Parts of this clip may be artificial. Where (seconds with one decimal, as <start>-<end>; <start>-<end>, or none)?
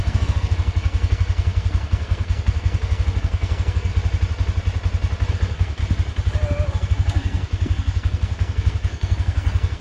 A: 0.0-3.9; 5.3-5.8; 6.7-9.8